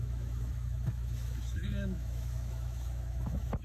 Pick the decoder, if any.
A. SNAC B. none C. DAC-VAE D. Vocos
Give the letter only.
C